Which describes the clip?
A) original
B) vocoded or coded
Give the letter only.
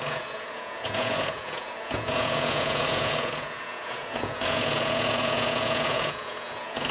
B